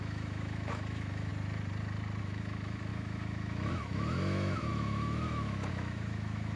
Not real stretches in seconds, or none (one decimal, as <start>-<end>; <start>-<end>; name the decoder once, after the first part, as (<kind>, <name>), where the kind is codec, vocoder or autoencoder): 0.0-1.3 (autoencoder, DAC-VAE); 2.2-6.6